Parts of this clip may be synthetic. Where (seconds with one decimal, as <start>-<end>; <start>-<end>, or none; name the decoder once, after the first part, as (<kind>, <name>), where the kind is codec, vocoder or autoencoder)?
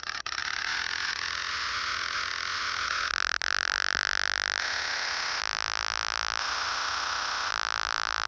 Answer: 0.0-3.1 (vocoder, HiFi-GAN); 4.6-5.4; 6.4-7.5